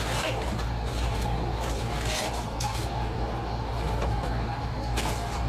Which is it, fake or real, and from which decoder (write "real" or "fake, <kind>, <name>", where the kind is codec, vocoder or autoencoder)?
fake, codec, DAC